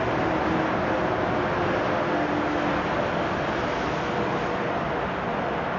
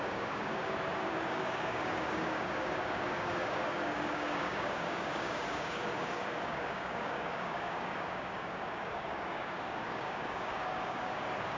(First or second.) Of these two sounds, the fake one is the second